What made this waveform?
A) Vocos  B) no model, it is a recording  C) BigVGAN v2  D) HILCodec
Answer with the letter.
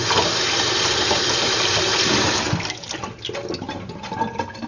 B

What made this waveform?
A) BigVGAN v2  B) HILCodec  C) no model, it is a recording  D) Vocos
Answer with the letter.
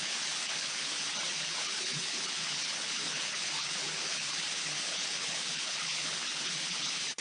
B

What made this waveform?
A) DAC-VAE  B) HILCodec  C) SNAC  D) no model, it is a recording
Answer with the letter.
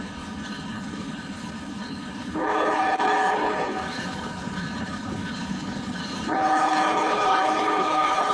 B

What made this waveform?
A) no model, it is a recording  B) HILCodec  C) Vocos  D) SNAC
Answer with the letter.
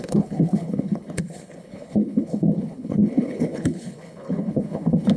B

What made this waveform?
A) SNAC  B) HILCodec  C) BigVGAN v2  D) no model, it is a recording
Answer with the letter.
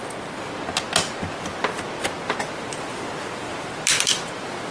D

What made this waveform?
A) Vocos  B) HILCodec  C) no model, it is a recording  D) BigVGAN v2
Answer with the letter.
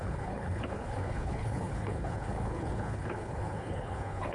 B